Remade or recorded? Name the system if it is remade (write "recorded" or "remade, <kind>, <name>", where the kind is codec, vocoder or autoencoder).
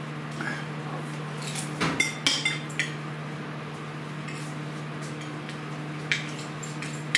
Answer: recorded